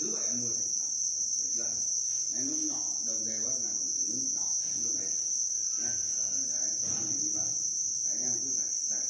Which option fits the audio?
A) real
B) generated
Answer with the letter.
A